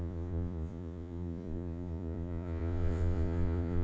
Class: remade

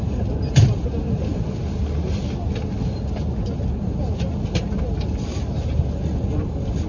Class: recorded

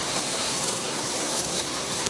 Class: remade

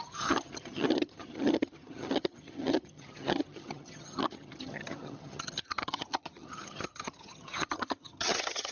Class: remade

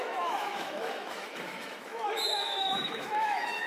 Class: remade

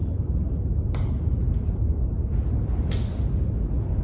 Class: recorded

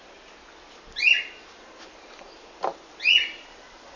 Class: recorded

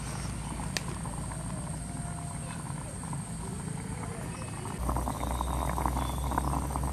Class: recorded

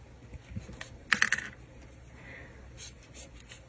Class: recorded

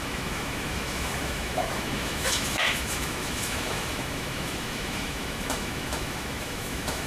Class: remade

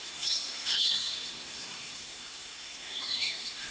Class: remade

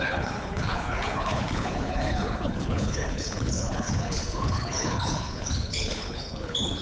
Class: remade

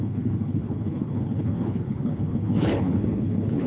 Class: remade